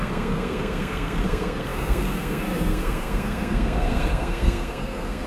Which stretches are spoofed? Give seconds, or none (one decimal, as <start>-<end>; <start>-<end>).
0.0-5.3